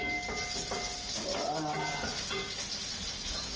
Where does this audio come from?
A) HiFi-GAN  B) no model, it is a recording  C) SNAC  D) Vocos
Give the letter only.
B